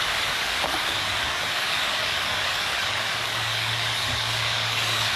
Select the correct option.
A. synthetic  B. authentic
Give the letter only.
A